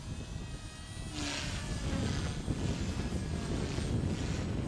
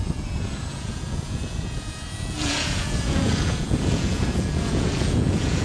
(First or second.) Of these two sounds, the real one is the first